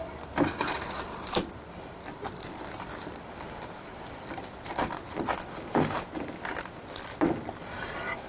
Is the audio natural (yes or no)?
no